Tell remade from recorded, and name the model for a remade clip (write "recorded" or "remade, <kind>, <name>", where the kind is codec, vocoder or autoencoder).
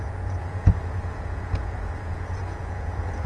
remade, vocoder, Vocos